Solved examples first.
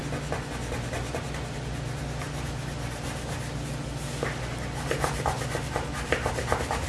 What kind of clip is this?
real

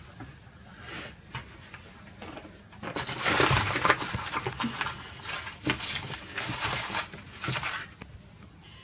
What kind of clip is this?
real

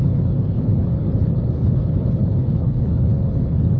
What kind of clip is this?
fake